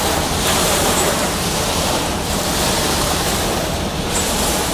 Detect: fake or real fake